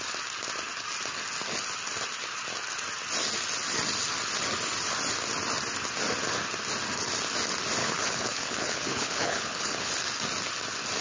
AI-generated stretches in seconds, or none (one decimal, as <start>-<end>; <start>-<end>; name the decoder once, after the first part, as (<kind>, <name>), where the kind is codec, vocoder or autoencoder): 7.8-9.9 (codec, HILCodec)